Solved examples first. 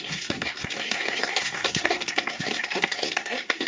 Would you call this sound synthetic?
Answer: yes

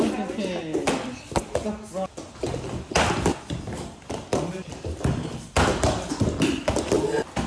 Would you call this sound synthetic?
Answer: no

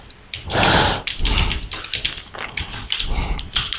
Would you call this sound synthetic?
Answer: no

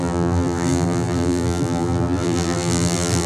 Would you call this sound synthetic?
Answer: yes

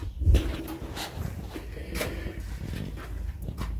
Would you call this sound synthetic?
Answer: no